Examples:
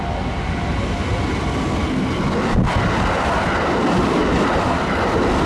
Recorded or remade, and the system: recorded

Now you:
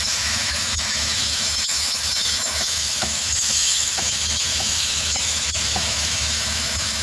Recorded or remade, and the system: remade, autoencoder, DAC-VAE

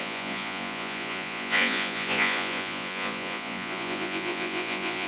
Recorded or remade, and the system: remade, vocoder, Vocos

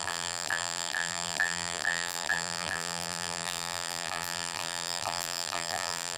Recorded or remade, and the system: remade, vocoder, BigVGAN v2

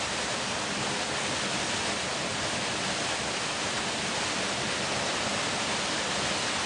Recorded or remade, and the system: recorded